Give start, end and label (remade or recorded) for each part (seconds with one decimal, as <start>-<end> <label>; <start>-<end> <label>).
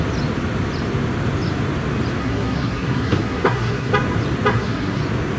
0.0-2.2 recorded; 2.2-3.9 remade; 3.9-4.5 recorded; 4.5-5.0 remade; 5.0-5.4 recorded